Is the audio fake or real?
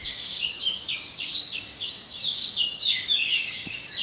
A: fake